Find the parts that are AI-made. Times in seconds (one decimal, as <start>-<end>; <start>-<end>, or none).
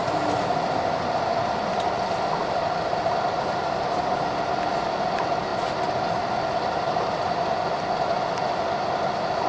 0.0-1.7; 2.4-3.6